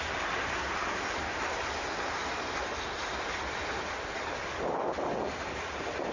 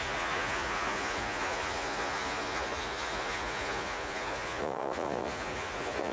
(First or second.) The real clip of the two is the first